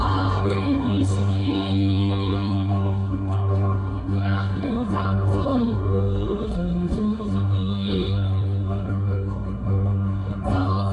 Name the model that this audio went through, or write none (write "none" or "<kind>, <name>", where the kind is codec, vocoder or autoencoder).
codec, SNAC